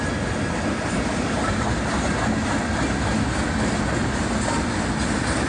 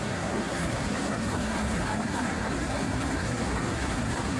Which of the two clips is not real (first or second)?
second